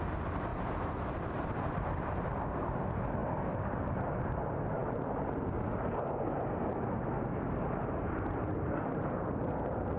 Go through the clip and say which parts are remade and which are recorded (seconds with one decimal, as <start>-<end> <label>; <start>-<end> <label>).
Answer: 0.0-0.5 recorded; 0.5-2.3 remade; 2.3-3.2 recorded; 3.2-4.3 remade; 4.3-10.0 recorded